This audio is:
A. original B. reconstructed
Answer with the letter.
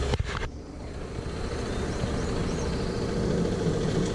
A